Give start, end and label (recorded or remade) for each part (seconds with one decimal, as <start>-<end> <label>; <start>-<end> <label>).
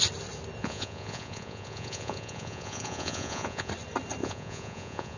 0.0-0.6 recorded; 0.6-3.7 remade; 3.7-4.2 recorded; 4.2-5.2 remade